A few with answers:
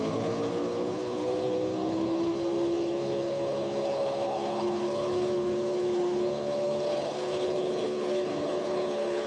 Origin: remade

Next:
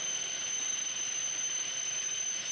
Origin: recorded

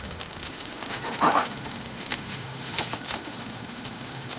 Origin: remade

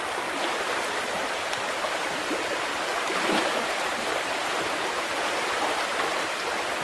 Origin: remade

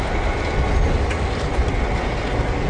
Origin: recorded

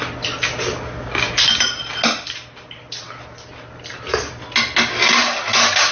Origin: recorded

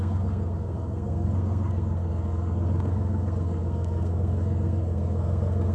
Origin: remade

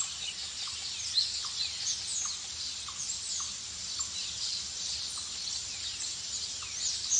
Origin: recorded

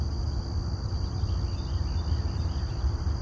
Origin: recorded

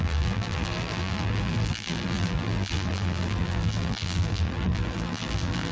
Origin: remade